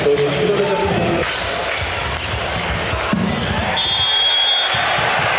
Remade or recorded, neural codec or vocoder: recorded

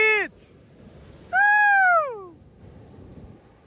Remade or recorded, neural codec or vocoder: recorded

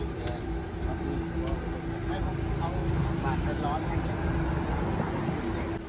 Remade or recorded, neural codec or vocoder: recorded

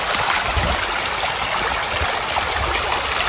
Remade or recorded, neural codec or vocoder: recorded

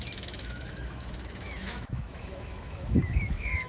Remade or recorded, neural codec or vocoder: remade, autoencoder, DAC-VAE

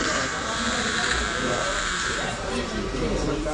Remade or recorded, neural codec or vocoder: remade, vocoder, BigVGAN v2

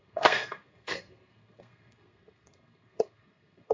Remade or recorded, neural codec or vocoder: remade, codec, SNAC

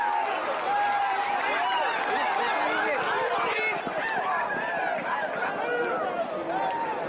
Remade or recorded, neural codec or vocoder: recorded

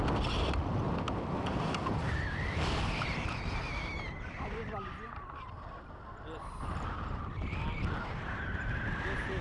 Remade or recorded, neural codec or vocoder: recorded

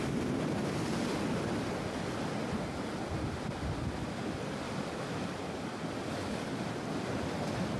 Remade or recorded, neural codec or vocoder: recorded